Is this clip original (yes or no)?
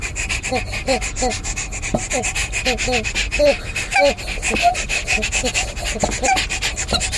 yes